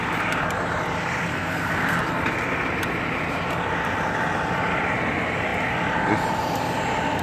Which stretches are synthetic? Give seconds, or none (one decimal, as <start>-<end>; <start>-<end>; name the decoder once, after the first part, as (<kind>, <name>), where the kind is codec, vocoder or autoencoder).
1.3-2.0 (codec, SNAC)

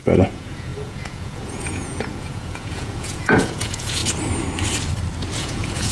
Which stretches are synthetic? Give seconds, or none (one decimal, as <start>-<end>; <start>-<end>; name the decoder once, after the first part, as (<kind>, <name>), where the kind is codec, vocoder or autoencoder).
0.0-4.0 (vocoder, Vocos); 5.4-5.9

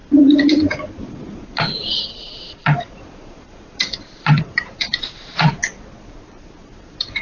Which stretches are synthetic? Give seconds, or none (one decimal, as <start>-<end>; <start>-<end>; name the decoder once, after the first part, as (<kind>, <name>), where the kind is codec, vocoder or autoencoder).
1.0-7.2 (vocoder, Vocos)

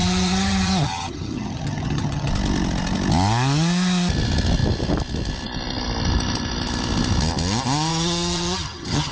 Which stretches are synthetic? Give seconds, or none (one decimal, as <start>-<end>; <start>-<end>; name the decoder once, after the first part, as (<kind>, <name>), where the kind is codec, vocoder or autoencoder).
0.0-2.3 (vocoder, HiFi-GAN); 7.9-9.1

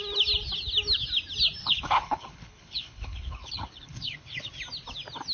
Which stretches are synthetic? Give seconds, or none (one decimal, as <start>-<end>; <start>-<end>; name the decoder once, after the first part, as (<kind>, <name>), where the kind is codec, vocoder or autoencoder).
1.6-4.5 (codec, HILCodec)